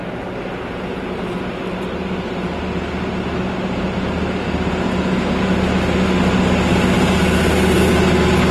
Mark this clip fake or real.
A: real